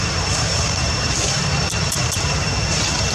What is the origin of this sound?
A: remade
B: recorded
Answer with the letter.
A